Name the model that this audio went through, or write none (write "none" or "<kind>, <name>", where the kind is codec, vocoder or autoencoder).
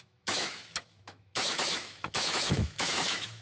autoencoder, DAC-VAE